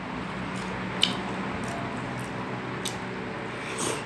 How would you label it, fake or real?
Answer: real